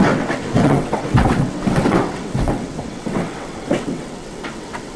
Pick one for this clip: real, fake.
fake